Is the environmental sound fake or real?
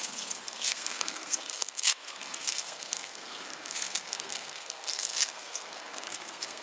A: fake